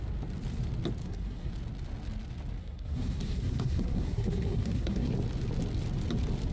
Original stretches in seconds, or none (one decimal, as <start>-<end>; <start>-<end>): 0.0-1.0; 1.5-2.6; 5.1-6.5